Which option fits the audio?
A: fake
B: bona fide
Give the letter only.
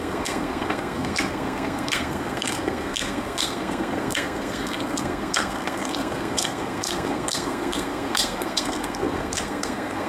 A